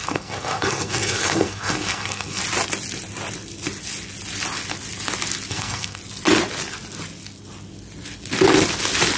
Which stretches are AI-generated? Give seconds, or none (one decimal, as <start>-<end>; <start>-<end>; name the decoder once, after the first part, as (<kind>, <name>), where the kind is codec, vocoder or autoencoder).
0.0-2.4 (codec, SNAC); 5.5-6.0

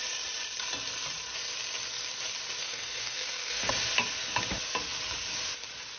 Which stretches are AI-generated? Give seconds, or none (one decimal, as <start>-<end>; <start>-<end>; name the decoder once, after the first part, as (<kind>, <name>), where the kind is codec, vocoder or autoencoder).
2.6-3.7 (codec, SNAC)

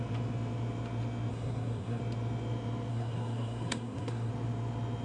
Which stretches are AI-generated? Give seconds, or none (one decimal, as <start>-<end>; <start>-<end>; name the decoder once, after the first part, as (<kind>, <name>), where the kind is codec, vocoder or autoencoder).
1.3-2.0 (codec, SNAC); 2.9-4.3

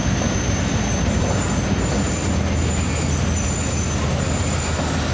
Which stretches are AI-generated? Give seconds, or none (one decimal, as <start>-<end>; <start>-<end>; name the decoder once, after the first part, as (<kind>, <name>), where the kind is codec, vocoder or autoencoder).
none

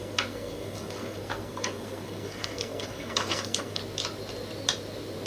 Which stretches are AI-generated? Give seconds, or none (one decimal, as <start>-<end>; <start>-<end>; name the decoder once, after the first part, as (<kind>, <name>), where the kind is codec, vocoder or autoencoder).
0.0-3.8 (codec, SNAC)